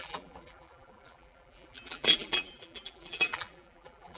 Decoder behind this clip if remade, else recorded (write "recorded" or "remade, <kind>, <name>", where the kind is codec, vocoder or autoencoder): remade, vocoder, BigVGAN v2